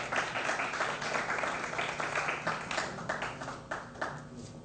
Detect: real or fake real